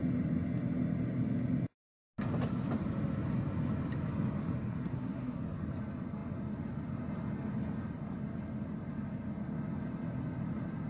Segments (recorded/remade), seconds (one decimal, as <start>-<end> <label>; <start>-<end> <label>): 0.0-4.7 recorded; 4.7-5.4 remade; 5.4-10.9 recorded